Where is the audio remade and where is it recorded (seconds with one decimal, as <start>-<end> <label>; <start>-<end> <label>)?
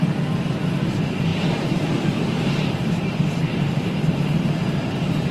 0.0-5.3 recorded